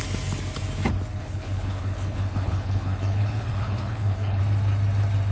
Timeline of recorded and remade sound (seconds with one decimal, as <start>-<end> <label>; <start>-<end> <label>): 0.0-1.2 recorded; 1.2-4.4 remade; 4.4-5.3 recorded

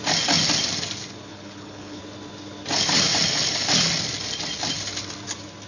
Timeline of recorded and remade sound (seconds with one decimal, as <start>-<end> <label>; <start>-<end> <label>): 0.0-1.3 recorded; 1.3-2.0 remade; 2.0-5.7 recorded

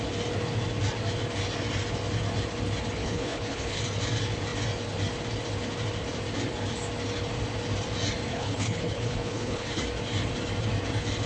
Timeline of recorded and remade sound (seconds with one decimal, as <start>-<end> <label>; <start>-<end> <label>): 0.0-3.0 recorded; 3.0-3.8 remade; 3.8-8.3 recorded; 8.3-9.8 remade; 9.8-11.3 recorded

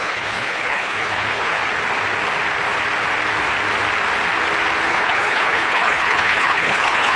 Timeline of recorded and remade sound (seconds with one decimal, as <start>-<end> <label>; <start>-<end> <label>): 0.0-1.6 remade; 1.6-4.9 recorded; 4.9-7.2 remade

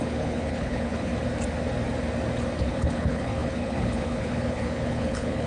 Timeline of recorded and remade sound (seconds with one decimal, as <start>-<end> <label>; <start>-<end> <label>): 0.0-1.1 remade; 1.1-2.6 recorded; 2.6-5.5 remade

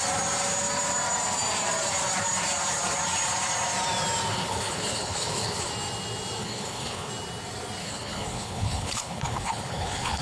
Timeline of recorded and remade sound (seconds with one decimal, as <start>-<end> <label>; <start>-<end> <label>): 0.0-4.3 recorded; 4.3-5.7 remade; 5.7-6.4 recorded; 6.4-7.1 remade; 7.1-7.8 recorded; 7.8-10.2 remade